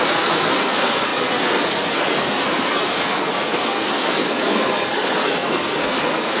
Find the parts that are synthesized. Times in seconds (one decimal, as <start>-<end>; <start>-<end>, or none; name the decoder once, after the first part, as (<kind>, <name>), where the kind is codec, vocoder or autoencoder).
0.0-6.4 (codec, SNAC)